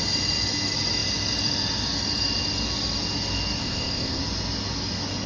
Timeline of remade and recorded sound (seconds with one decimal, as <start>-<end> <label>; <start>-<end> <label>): 0.0-3.6 recorded; 3.6-4.2 remade; 4.2-5.3 recorded